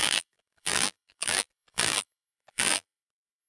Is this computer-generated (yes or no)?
yes